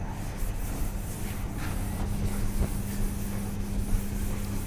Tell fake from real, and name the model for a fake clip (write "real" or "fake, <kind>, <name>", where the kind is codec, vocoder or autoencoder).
real